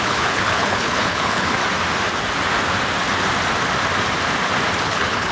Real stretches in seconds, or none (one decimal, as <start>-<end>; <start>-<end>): 1.6-4.8